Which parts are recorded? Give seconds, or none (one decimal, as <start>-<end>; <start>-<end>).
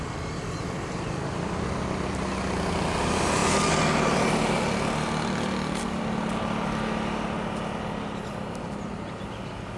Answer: 0.0-9.8